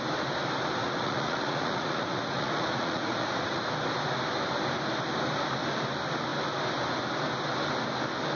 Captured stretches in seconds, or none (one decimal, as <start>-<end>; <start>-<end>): 0.0-0.8; 3.6-8.4